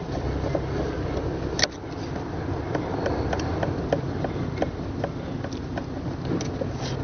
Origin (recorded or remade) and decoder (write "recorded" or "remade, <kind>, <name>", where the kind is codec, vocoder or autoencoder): recorded